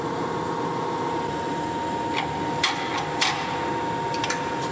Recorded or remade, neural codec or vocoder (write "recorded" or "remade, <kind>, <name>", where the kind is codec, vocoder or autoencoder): recorded